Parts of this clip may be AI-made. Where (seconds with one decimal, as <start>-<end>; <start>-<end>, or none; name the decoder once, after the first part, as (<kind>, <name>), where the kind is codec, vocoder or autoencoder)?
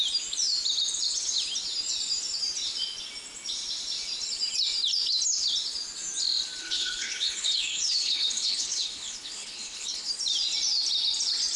6.6-10.1 (codec, HILCodec)